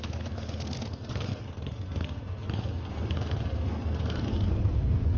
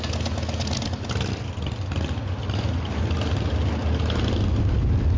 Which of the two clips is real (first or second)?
second